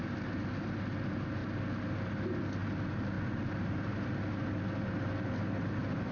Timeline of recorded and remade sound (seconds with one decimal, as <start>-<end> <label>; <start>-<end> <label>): 0.0-6.1 recorded